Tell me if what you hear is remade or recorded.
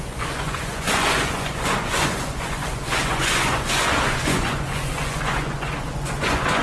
remade